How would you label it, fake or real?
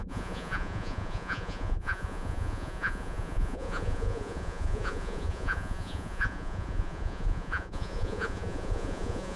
fake